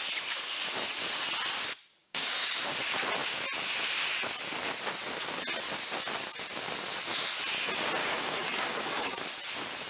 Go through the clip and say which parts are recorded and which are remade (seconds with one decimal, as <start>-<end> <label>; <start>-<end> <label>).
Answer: 0.0-2.0 recorded; 2.0-2.6 remade; 2.6-8.0 recorded; 8.0-9.2 remade; 9.2-9.9 recorded